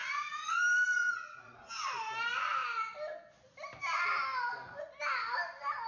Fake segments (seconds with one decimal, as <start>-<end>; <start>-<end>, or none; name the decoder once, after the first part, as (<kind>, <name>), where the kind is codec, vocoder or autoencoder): 0.0-0.6 (vocoder, Vocos); 1.0-1.7